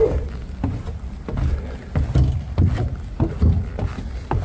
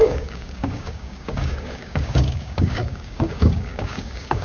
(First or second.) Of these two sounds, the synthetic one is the second